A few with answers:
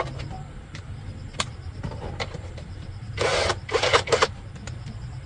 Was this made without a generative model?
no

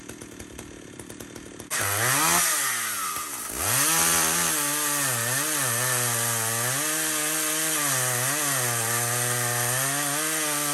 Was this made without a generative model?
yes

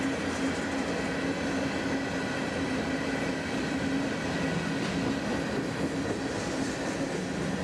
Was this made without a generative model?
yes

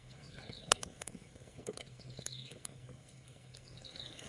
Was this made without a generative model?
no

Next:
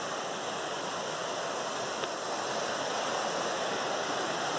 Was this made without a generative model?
yes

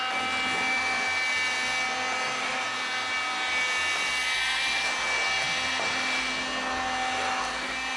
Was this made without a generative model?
yes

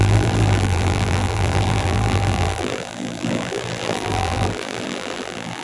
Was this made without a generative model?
no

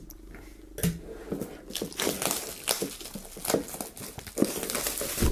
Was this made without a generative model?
yes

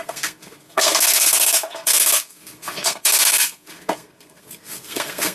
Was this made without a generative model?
no